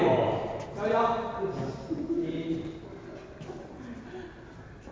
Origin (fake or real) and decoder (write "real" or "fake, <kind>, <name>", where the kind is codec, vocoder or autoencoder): real